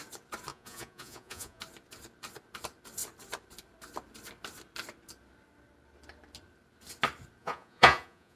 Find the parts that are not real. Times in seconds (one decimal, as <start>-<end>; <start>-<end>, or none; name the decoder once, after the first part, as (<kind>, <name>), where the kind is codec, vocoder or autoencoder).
0.5-1.6 (vocoder, Vocos); 7.4-8.4